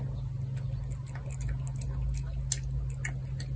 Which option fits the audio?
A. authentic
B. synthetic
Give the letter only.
A